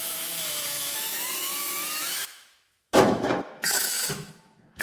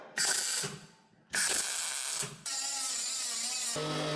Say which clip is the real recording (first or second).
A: second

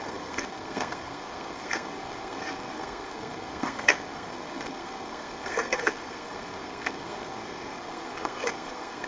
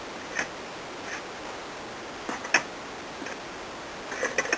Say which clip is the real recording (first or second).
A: second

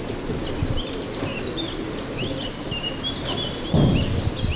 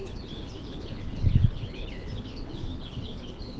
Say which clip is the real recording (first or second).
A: first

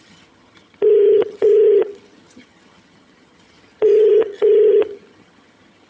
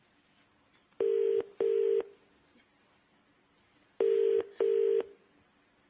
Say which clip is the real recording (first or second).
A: second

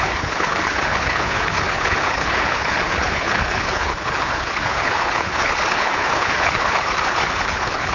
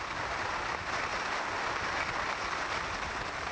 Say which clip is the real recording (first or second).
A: second